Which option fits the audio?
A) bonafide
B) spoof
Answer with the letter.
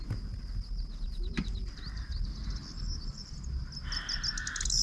A